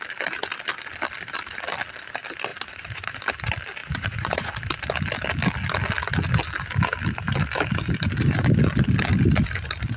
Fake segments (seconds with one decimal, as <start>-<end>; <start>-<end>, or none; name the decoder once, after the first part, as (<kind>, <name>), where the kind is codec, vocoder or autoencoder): 2.5-3.2 (vocoder, Vocos); 3.8-4.5